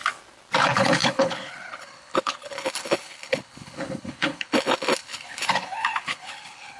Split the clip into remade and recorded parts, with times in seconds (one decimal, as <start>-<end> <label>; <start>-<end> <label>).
0.0-0.6 recorded; 0.6-6.8 remade